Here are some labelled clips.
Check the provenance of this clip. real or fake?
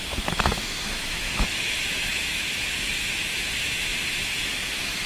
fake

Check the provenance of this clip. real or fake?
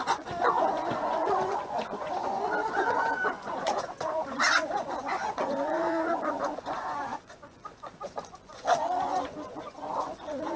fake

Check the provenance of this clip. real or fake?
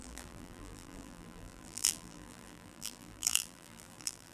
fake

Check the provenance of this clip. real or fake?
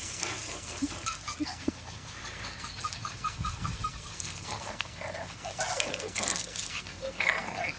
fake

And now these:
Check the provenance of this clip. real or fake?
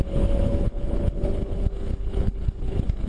fake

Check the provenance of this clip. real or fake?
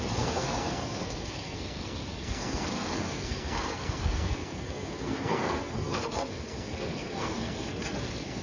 fake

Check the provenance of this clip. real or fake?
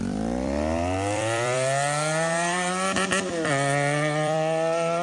fake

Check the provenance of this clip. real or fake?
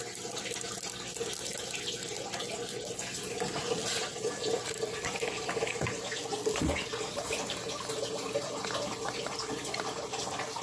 real